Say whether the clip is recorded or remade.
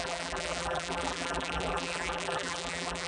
remade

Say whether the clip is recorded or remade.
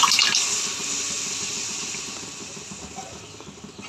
recorded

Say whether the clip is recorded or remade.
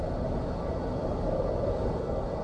recorded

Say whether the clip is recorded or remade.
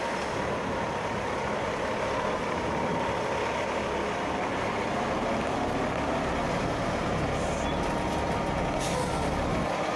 recorded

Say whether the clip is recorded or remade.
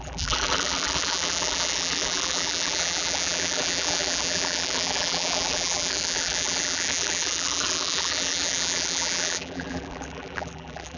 remade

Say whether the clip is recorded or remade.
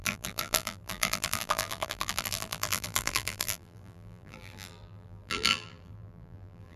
remade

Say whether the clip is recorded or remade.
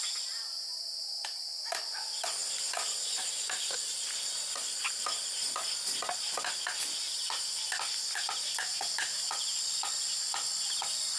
recorded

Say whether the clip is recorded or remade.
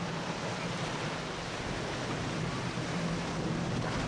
remade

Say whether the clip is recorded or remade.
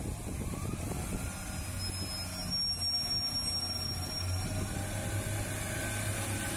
recorded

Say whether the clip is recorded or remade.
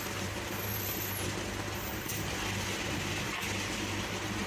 remade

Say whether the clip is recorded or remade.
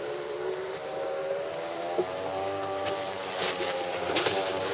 remade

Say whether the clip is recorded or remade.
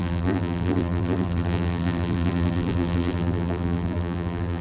remade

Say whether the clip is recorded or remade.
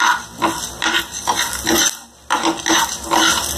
recorded